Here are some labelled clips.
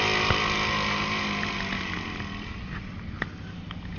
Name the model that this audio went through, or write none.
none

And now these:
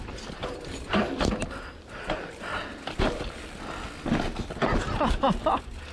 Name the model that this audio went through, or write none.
none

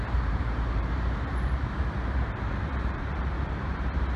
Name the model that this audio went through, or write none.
vocoder, BigVGAN v2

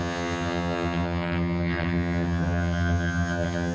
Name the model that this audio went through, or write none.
vocoder, HiFi-GAN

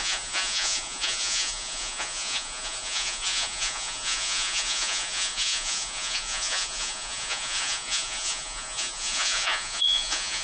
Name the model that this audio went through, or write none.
vocoder, Vocos